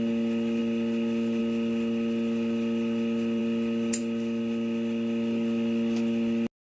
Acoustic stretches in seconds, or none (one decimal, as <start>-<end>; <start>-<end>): 0.0-6.7